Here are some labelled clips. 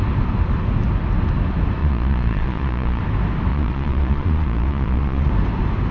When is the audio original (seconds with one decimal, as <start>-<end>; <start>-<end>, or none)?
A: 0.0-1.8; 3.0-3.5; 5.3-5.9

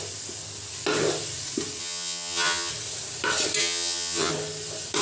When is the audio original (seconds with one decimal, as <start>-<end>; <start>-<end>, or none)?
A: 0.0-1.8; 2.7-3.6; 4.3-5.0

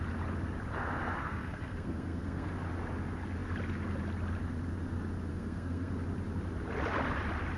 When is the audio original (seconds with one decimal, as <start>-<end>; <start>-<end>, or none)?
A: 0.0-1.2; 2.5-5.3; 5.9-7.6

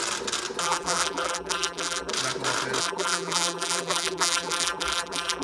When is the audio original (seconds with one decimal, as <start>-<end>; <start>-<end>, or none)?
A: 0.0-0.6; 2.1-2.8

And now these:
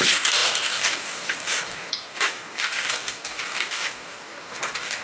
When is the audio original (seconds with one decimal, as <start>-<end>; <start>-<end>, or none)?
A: none